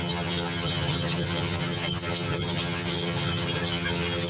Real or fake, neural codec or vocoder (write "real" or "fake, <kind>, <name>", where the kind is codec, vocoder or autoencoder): fake, vocoder, HiFi-GAN